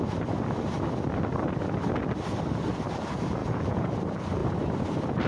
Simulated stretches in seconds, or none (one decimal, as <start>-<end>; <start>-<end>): 3.4-3.9